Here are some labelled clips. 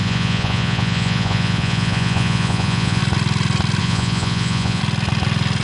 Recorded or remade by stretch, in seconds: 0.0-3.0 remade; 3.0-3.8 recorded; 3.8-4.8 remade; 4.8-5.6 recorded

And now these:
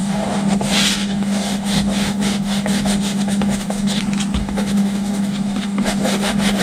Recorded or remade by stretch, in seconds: 0.0-4.0 remade; 4.0-4.4 recorded; 4.4-6.6 remade

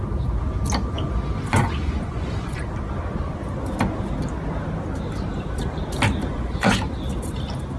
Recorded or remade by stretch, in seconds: 0.0-1.5 recorded; 1.5-2.6 remade; 2.6-6.3 recorded; 6.3-6.8 remade; 6.8-7.8 recorded

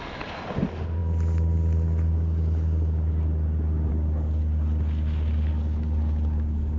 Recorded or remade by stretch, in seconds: 0.0-6.8 recorded

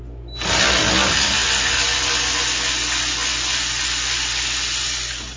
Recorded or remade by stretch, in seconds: 0.0-5.4 recorded

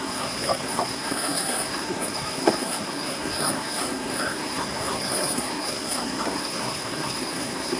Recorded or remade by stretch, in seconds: 0.0-7.8 remade

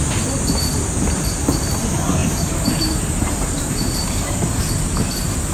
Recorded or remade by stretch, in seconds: 0.0-2.2 recorded; 2.2-4.6 remade; 4.6-5.5 recorded